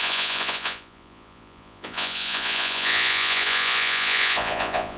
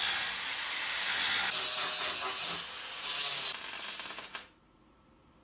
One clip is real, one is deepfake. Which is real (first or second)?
second